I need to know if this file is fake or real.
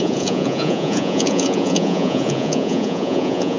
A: fake